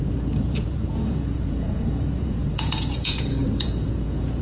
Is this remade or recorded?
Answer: remade